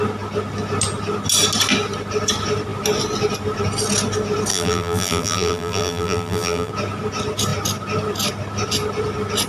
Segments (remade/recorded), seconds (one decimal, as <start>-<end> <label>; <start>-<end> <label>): 0.0-4.5 recorded; 4.5-6.7 remade; 6.7-9.5 recorded